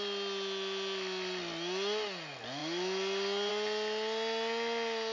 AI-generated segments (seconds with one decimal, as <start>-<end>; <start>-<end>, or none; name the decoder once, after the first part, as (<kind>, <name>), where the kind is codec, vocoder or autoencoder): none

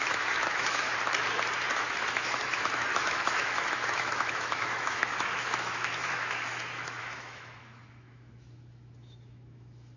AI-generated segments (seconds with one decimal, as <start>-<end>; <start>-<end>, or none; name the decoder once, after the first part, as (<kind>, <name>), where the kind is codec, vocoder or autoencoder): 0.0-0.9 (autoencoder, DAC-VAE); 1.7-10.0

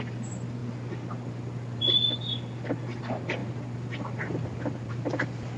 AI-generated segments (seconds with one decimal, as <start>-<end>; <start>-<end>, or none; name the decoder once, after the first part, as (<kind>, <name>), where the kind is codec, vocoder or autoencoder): none